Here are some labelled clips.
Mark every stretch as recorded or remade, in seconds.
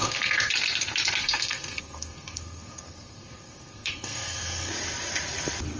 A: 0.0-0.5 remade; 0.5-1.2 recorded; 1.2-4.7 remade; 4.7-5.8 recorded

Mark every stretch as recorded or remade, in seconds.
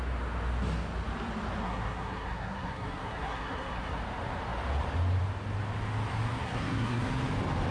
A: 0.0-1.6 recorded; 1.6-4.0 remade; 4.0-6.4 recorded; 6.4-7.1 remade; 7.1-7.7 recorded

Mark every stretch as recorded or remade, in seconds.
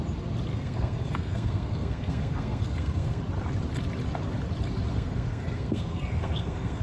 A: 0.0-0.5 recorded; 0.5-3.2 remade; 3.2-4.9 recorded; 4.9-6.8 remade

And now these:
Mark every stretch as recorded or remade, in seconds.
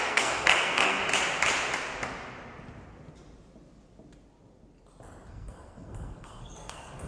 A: 0.0-1.0 remade; 1.0-5.3 recorded; 5.3-7.1 remade